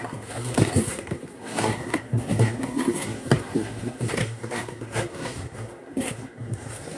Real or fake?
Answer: fake